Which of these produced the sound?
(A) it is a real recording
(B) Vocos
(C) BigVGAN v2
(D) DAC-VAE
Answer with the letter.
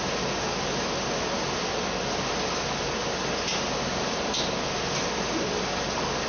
A